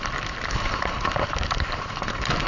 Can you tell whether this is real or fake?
real